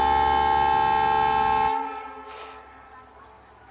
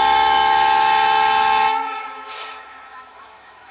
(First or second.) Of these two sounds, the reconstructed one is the second